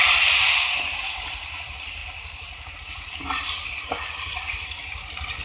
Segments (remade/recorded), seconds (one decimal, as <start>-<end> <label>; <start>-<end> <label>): 0.0-2.0 recorded; 2.0-2.7 remade; 2.7-5.4 recorded